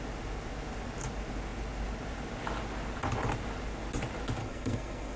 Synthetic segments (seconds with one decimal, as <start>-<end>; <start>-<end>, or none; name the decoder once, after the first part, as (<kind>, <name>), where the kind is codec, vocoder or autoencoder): 4.4-5.2 (codec, SNAC)